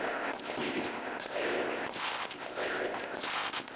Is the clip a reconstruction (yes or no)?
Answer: yes